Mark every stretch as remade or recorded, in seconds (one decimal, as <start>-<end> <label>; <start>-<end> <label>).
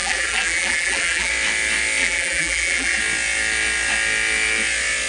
0.0-1.3 remade; 1.3-2.0 recorded; 2.0-3.0 remade; 3.0-5.1 recorded